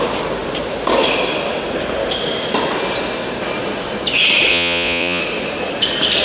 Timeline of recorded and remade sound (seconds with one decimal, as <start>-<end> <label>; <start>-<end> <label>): 0.0-4.5 recorded; 4.5-5.2 remade; 5.2-6.2 recorded